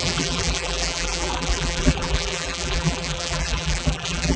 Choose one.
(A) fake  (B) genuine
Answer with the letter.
A